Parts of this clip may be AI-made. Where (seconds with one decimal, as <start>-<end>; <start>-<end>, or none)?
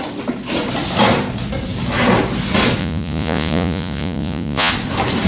2.8-4.7